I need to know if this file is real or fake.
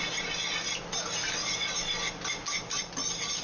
real